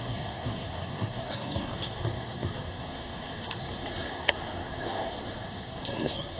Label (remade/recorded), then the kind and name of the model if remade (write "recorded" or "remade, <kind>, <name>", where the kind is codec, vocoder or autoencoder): remade, codec, SNAC